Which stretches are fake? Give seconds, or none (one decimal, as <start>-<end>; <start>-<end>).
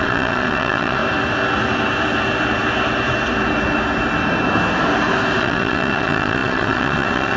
0.0-1.0; 5.4-7.4